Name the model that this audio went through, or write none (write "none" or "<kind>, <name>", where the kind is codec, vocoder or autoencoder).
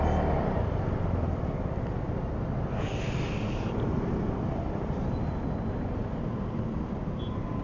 none